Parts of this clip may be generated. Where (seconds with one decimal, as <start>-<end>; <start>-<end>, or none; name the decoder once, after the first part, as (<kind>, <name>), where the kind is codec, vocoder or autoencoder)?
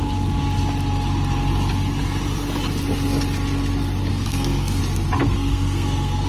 4.1-4.8 (codec, SNAC); 5.2-6.3